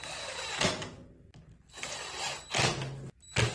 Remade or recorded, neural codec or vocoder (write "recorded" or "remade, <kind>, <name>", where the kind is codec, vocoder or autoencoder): recorded